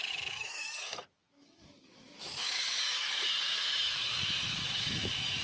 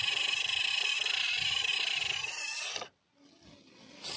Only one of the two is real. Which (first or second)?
second